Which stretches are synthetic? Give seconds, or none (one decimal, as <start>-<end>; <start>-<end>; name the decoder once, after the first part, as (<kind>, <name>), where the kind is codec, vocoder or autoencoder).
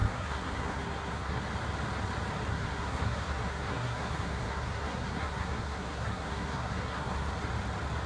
0.0-1.4 (codec, SNAC); 2.5-7.3